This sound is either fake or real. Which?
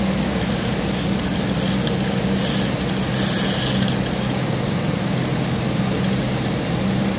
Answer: real